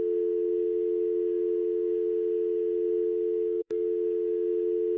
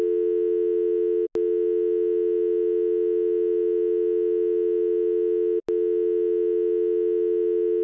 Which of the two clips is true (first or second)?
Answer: second